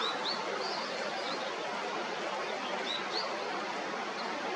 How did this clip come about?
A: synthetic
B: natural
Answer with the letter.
B